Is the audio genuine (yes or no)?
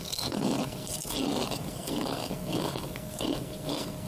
no